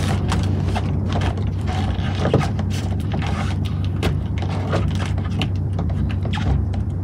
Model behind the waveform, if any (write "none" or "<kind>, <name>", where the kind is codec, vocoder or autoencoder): vocoder, BigVGAN v2